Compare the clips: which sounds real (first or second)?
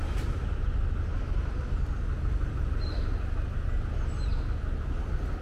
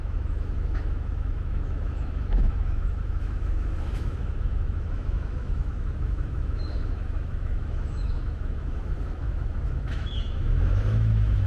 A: first